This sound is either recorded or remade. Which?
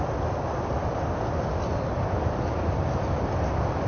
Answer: remade